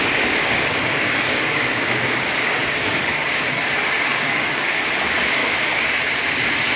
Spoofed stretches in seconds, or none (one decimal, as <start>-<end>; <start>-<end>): 0.0-3.4; 4.1-4.8; 5.4-6.1

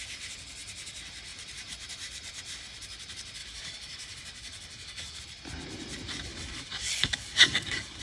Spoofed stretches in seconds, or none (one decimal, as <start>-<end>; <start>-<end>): 3.4-5.2; 6.3-8.0

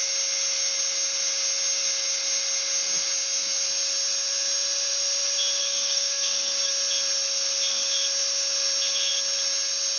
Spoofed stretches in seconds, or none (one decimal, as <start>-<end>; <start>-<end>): 5.6-6.7

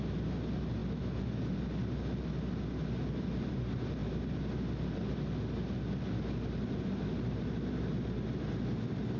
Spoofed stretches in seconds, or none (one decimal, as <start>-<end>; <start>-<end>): none

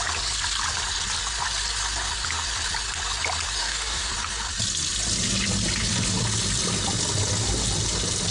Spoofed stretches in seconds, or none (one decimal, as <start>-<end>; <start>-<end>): 3.6-4.1

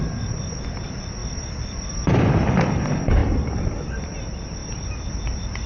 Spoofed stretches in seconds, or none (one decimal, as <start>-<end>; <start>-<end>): none

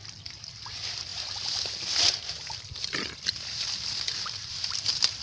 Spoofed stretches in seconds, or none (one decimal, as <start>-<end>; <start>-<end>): none